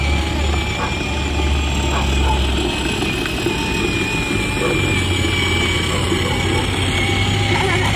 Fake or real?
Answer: real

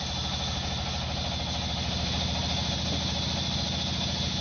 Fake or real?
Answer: real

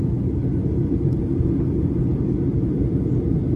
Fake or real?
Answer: real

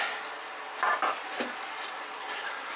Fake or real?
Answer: real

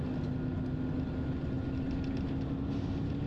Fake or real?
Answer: real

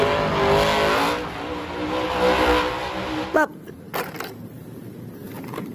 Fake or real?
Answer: real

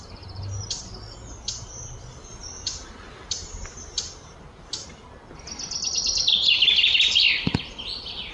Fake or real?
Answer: real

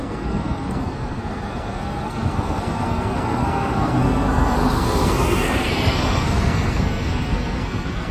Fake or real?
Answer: fake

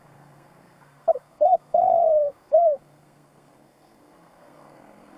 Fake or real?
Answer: fake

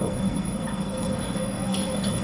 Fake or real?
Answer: fake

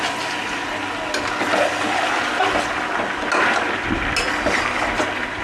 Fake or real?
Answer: real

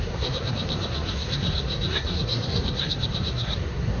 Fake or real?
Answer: fake